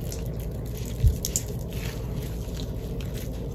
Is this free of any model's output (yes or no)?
yes